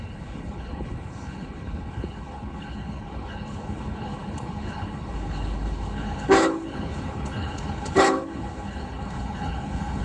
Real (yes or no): no